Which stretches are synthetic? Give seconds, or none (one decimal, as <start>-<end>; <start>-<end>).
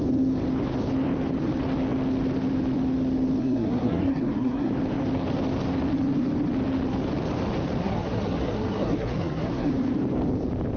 3.4-4.7; 7.8-9.7